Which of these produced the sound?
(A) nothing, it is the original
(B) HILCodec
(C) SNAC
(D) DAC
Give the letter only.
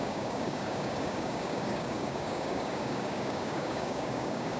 D